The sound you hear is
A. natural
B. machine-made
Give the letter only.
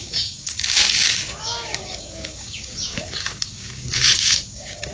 B